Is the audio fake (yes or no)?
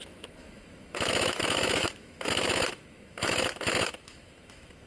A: yes